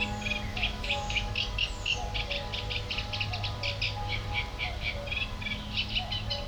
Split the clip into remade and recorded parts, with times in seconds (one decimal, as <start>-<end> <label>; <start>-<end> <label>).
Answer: 0.0-0.5 recorded; 0.5-1.3 remade; 1.3-6.5 recorded